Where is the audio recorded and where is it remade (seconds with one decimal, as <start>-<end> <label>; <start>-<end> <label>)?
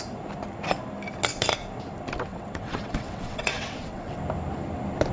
0.0-2.3 recorded; 2.3-4.2 remade; 4.2-5.1 recorded